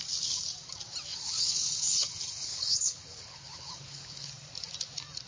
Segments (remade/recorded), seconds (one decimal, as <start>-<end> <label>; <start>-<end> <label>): 0.0-1.1 recorded; 1.1-4.3 remade; 4.3-5.3 recorded